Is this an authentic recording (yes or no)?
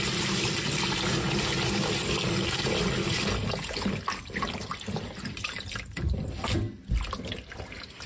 yes